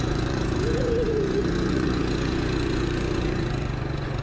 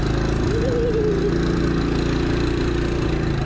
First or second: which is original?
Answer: second